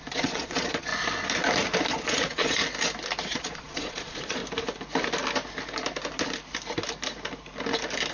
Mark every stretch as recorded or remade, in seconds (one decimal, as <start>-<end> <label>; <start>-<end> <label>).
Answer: 0.0-0.9 remade; 0.9-1.9 recorded; 1.9-2.6 remade; 2.6-3.2 recorded; 3.2-4.4 remade; 4.4-8.1 recorded